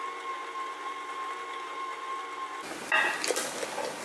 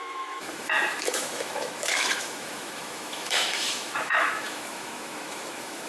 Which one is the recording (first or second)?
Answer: first